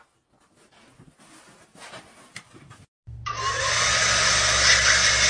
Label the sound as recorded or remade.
recorded